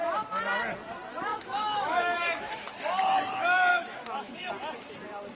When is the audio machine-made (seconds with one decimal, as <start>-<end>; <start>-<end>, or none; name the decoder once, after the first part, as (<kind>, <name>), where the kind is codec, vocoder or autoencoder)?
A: 1.3-3.0 (autoencoder, DAC-VAE); 3.7-4.5